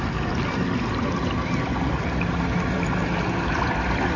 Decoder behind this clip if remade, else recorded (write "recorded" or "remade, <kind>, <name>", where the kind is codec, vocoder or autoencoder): recorded